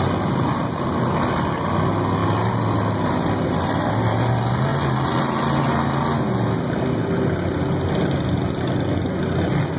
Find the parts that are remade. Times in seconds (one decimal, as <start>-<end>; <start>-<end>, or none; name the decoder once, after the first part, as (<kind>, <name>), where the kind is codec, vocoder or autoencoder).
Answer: none